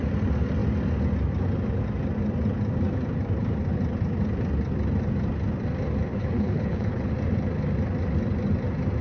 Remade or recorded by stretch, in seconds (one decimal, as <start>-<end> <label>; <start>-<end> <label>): 0.0-6.1 recorded; 6.1-7.1 remade; 7.1-9.0 recorded